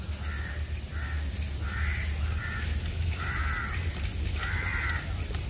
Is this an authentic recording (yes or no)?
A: yes